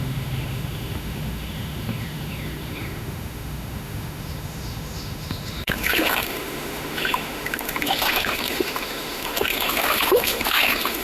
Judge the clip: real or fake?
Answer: fake